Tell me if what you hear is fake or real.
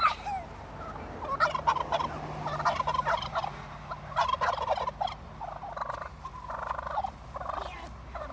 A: real